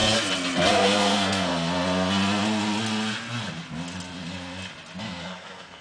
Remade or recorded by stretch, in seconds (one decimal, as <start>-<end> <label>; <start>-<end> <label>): 0.0-0.7 recorded; 0.7-1.5 remade; 1.5-5.0 recorded; 5.0-5.8 remade